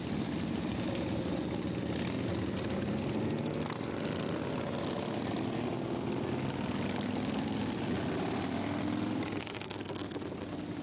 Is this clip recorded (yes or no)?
yes